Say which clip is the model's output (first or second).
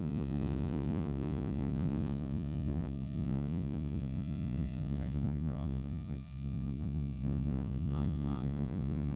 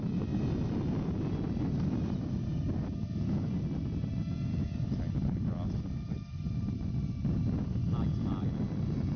first